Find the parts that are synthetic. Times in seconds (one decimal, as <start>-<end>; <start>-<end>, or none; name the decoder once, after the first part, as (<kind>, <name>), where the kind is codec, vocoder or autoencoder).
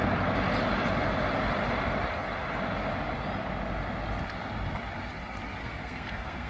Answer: 5.6-6.5 (codec, SNAC)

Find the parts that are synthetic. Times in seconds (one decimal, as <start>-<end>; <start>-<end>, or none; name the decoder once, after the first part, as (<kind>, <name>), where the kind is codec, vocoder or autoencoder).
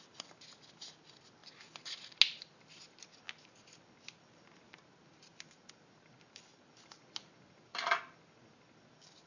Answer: none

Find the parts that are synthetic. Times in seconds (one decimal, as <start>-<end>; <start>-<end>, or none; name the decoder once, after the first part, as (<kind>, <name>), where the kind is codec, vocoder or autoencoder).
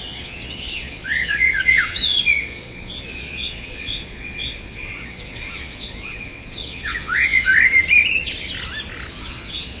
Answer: 0.0-7.5 (vocoder, Vocos); 9.1-9.8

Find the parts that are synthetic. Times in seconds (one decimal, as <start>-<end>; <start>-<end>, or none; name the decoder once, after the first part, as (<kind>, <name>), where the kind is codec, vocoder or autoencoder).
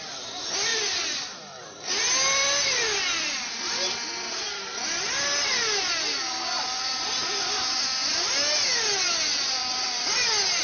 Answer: none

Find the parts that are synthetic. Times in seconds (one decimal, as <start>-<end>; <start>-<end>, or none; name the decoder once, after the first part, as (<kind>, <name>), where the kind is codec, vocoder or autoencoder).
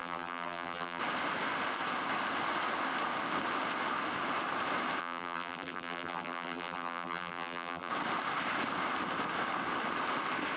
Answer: 0.0-1.0 (vocoder, BigVGAN v2); 5.0-7.9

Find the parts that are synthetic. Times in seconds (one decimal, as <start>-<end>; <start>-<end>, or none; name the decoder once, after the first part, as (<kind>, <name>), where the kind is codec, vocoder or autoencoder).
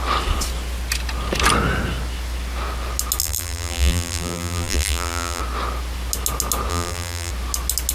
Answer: 3.2-5.4 (vocoder, BigVGAN v2); 6.7-7.3